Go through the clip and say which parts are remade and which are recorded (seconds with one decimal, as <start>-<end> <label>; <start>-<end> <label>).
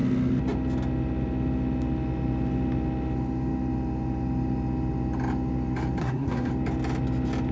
0.0-6.0 recorded; 6.0-6.5 remade; 6.5-7.5 recorded